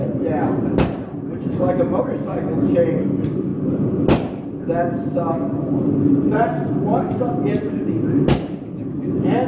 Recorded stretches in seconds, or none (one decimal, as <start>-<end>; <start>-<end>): 3.5-4.6